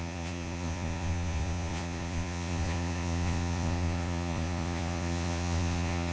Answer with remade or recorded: remade